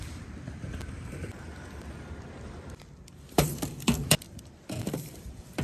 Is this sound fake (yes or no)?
yes